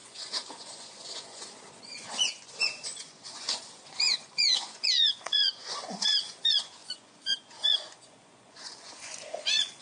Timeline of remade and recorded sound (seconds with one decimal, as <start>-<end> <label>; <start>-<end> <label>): 0.0-9.8 remade